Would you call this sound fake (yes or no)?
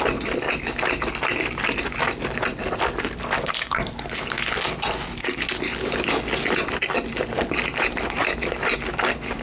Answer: no